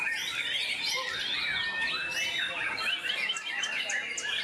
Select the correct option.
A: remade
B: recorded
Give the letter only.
B